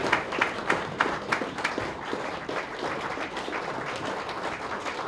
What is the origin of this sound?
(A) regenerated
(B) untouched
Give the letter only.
B